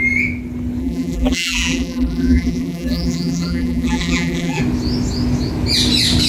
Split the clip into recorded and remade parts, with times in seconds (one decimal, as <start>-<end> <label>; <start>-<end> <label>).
0.0-0.8 recorded; 0.8-4.6 remade; 4.6-6.3 recorded